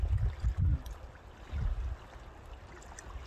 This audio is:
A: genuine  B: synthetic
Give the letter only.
A